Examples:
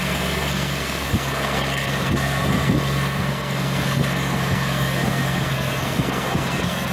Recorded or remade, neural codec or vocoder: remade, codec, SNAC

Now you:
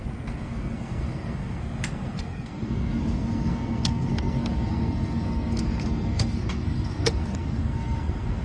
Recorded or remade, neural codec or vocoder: remade, codec, SNAC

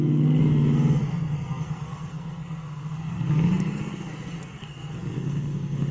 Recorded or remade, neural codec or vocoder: remade, codec, SNAC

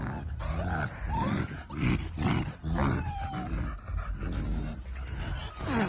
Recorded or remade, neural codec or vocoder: recorded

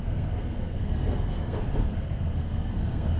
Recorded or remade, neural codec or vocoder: remade, codec, SNAC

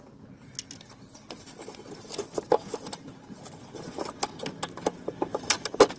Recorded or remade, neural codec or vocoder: recorded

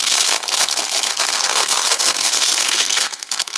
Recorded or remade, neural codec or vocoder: remade, codec, SNAC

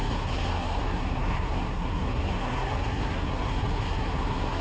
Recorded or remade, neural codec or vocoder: remade, codec, SNAC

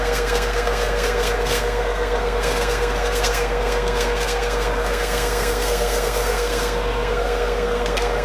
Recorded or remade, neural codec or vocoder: remade, codec, SNAC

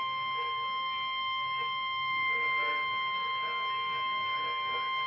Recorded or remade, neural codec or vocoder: remade, codec, SNAC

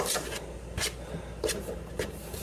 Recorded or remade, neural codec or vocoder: recorded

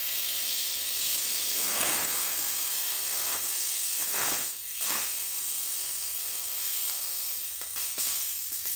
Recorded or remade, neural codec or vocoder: remade, codec, SNAC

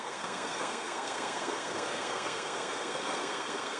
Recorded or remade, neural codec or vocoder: remade, codec, SNAC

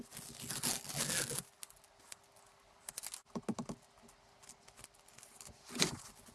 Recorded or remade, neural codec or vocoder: recorded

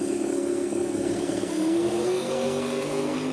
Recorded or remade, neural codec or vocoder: remade, codec, SNAC